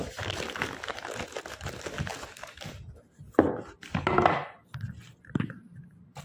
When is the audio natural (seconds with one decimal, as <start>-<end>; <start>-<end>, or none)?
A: 0.0-6.2